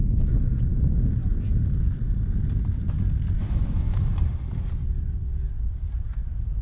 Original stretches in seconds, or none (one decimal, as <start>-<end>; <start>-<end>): 0.0-3.4; 4.1-6.6